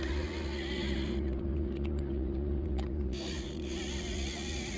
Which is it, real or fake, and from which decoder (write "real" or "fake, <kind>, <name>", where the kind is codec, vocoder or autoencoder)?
fake, vocoder, Vocos